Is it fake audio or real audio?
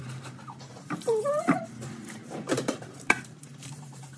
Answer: fake